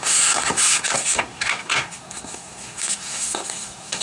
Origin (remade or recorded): remade